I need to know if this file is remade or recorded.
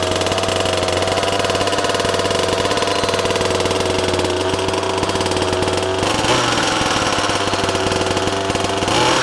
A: recorded